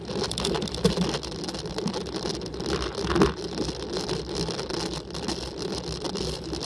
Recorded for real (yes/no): yes